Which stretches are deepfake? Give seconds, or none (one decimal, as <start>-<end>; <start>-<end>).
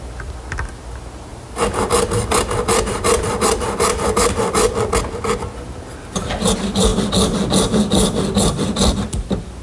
1.3-4.7